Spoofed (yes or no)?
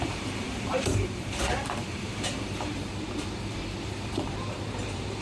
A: yes